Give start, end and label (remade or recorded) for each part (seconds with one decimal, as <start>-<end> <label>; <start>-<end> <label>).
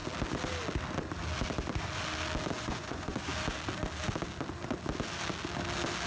0.0-2.6 recorded; 2.6-3.3 remade; 3.3-6.1 recorded